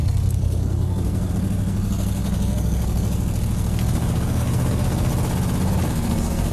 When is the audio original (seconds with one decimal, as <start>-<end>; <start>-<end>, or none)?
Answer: 5.1-5.9

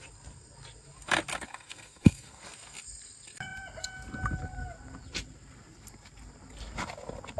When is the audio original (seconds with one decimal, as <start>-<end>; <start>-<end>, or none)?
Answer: 0.0-1.3; 2.4-7.4

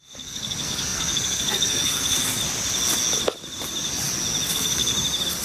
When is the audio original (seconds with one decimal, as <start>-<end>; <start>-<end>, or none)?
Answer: 2.4-4.5; 4.9-5.4

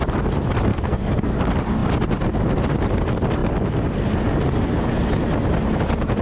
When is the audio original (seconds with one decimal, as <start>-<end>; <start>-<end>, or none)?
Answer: 0.0-0.7; 1.4-6.2

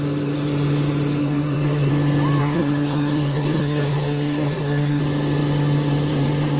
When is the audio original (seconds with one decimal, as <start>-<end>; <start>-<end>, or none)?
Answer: 0.0-1.2; 1.9-2.4; 5.0-6.6

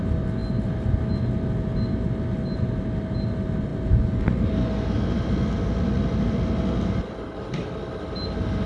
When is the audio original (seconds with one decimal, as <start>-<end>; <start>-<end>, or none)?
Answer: 0.0-8.7

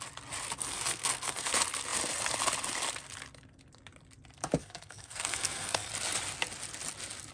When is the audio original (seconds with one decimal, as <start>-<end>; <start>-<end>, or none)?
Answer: 0.0-0.7; 1.5-4.6; 5.9-7.3